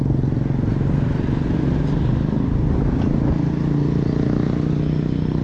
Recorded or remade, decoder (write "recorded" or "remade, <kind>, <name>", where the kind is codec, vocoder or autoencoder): recorded